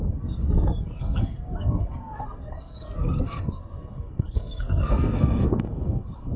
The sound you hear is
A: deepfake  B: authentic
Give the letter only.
A